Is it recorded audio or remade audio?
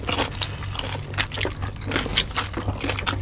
recorded